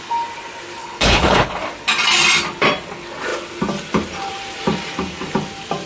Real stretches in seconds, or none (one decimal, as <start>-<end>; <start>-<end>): 0.0-0.8; 1.6-5.9